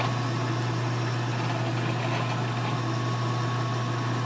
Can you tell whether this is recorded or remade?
recorded